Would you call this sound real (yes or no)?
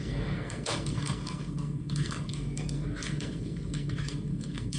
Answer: no